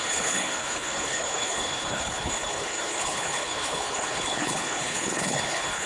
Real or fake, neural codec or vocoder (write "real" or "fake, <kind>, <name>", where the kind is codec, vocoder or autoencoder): fake, codec, HILCodec